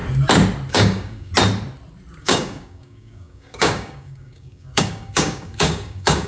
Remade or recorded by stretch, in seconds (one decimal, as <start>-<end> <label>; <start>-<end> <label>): 0.0-0.7 recorded; 0.7-1.3 remade; 1.3-2.2 recorded; 2.2-6.3 remade